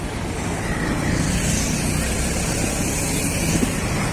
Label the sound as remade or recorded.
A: recorded